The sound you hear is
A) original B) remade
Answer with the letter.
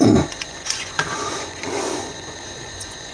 B